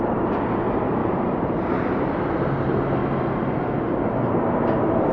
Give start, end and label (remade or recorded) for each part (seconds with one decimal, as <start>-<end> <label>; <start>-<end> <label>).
0.0-1.0 recorded; 1.0-2.1 remade; 2.1-5.1 recorded